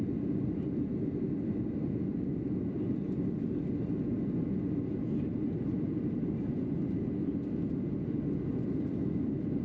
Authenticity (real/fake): real